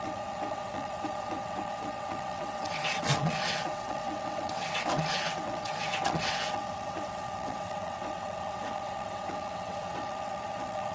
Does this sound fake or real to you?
fake